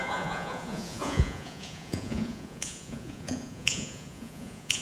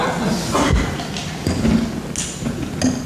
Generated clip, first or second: first